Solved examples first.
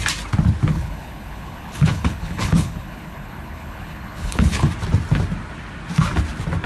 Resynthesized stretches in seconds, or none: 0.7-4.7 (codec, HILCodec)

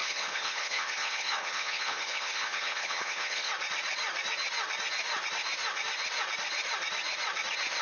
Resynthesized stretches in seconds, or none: 0.0-3.5 (codec, HILCodec)